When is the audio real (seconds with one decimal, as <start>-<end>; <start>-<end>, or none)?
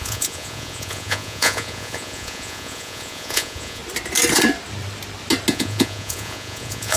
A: 3.8-5.5